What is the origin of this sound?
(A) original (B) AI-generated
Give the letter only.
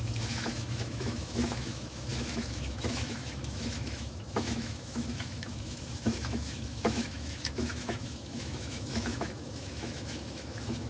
B